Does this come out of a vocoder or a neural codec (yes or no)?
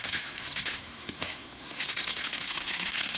yes